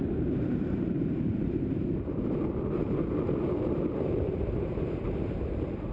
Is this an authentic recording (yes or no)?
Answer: no